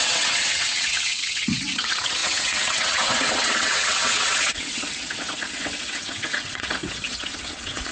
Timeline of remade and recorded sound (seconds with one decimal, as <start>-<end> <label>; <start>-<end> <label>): 0.0-7.9 remade

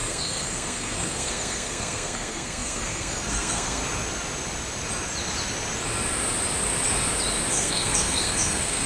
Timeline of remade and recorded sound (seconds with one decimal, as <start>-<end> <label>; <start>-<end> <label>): 0.0-3.8 remade; 3.8-7.5 recorded; 7.5-8.9 remade

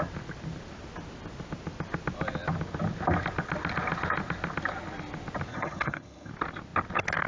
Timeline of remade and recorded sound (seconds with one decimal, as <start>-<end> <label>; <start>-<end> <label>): 0.0-5.5 recorded; 5.5-6.3 remade; 6.3-7.3 recorded

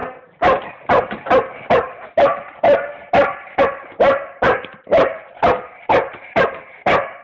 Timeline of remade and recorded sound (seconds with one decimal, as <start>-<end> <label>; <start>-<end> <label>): 0.0-7.2 recorded

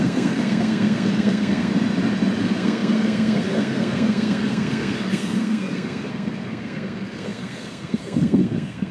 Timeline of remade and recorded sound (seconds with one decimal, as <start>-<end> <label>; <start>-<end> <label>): 0.0-1.7 remade; 1.7-2.4 recorded; 2.4-8.9 remade

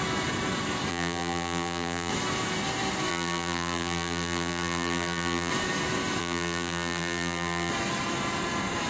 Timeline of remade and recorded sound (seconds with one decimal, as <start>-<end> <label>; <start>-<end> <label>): 0.0-0.9 recorded; 0.9-2.1 remade; 2.1-3.1 recorded; 3.1-5.5 remade; 5.5-6.2 recorded; 6.2-7.7 remade; 7.7-8.9 recorded

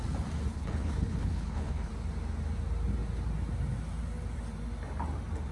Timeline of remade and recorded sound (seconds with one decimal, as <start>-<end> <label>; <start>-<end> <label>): 0.0-0.5 recorded; 0.5-1.9 remade; 1.9-5.5 recorded